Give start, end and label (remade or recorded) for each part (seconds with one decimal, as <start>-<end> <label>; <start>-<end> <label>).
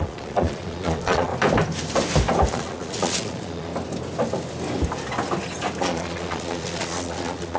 0.0-1.3 remade; 1.3-2.5 recorded; 2.5-3.7 remade; 3.7-5.8 recorded; 5.8-7.6 remade